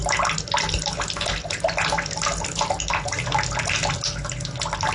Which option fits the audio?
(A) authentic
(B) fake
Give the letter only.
A